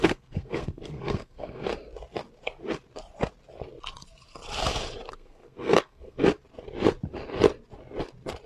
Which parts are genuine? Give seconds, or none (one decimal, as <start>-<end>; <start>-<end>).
1.7-5.1; 6.2-8.5

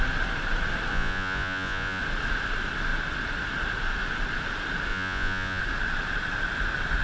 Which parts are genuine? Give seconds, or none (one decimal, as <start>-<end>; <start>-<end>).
0.0-0.9; 2.0-4.9; 5.6-7.0

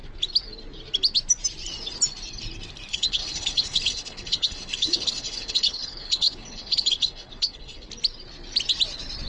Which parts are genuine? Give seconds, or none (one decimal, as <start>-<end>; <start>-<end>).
0.0-2.9; 7.9-9.3

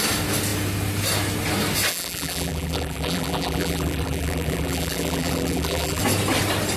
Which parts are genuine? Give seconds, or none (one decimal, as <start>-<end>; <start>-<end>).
0.0-1.9; 6.0-6.8

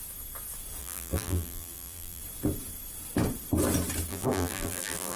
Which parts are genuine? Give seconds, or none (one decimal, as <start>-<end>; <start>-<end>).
0.0-0.8; 2.2-4.1

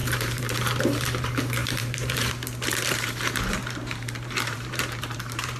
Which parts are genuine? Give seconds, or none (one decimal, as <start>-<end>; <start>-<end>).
none